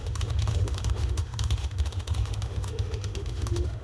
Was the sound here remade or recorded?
remade